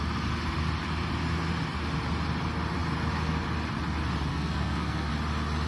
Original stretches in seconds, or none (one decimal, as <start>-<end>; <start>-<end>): 0.0-4.3; 5.1-5.7